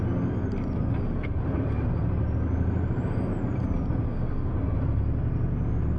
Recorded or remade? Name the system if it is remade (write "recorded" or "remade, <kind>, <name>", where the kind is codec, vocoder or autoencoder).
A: recorded